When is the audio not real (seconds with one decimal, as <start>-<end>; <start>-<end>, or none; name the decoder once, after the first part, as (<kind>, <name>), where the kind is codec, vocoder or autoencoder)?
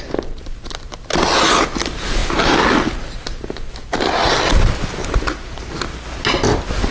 none